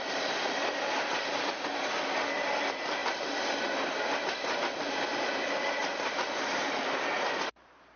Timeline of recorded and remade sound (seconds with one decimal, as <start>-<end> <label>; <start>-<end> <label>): 0.0-8.0 recorded